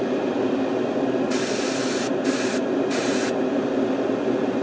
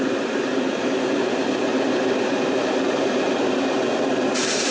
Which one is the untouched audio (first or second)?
first